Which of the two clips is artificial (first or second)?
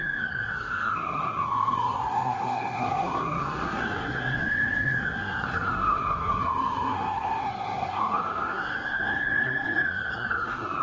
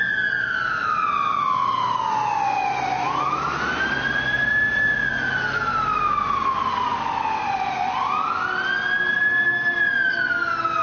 first